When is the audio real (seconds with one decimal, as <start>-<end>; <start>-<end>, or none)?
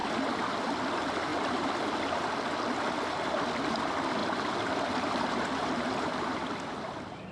0.0-7.3